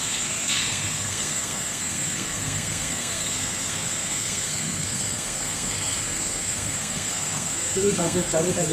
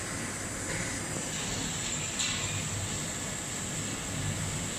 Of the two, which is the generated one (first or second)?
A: first